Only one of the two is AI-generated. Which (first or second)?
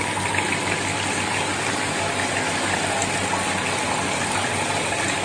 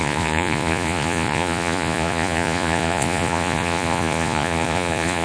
second